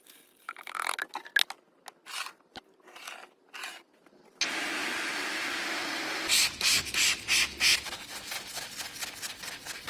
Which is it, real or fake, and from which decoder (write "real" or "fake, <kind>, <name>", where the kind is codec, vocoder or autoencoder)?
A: real